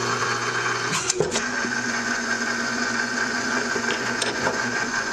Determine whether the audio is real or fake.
fake